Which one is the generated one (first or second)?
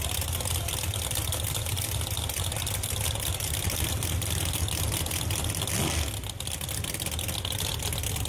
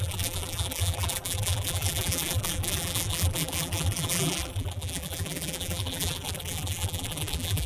second